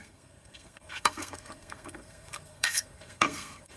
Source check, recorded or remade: remade